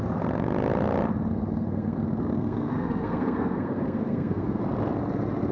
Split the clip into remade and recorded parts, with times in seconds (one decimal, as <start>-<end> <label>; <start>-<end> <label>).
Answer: 0.0-1.3 recorded; 1.3-4.6 remade; 4.6-5.5 recorded